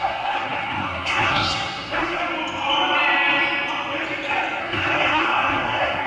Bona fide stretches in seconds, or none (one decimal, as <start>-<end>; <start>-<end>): 2.2-4.6